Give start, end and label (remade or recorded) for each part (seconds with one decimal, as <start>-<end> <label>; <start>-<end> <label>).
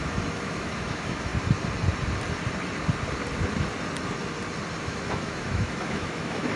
0.0-1.3 remade; 1.3-4.8 recorded; 4.8-6.6 remade